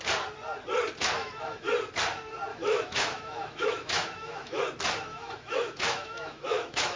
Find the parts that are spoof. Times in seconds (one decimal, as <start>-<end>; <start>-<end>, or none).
1.2-1.7; 2.5-4.6; 5.1-7.0